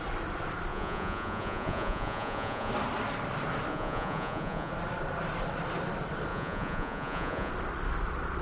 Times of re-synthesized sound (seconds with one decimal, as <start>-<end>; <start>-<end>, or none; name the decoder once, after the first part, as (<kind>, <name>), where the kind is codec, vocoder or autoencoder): 0.7-2.7 (vocoder, Vocos); 3.7-4.7; 6.3-7.5